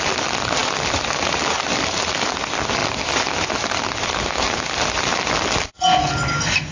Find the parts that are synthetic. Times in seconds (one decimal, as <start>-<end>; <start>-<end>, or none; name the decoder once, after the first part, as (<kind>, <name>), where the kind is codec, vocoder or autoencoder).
none